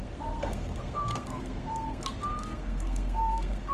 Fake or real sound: fake